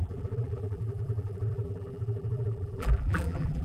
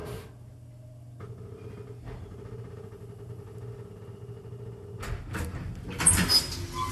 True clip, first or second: second